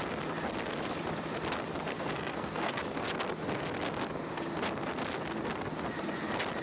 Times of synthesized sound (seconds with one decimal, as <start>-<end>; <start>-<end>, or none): 1.9-2.8